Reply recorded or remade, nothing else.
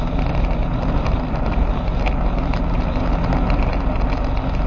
recorded